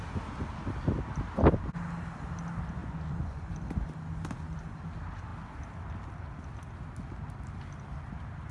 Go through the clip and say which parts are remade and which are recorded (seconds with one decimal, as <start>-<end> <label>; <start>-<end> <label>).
0.0-2.8 recorded; 2.8-3.5 remade; 3.5-8.5 recorded